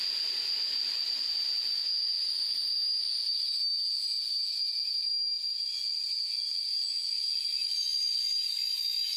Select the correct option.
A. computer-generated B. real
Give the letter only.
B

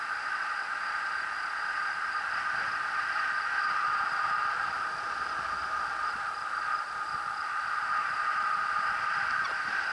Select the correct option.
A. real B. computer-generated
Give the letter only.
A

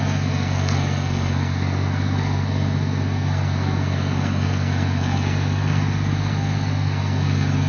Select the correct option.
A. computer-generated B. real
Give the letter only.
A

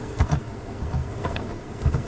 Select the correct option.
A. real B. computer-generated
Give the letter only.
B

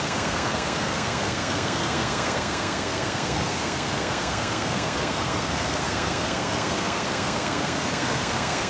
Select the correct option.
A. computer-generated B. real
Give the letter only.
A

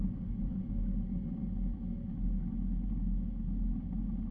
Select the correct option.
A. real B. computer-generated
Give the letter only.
A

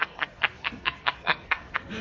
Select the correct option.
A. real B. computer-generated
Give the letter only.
B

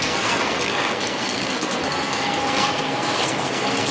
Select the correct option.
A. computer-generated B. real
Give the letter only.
A